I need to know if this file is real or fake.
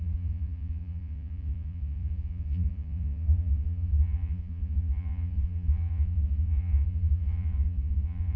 fake